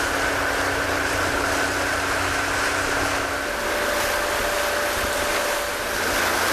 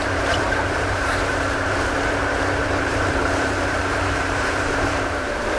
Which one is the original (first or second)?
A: first